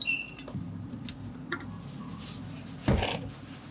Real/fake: real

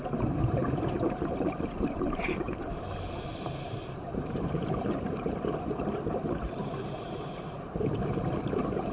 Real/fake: fake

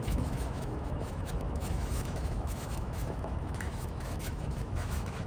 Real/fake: fake